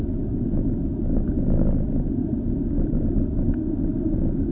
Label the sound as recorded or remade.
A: recorded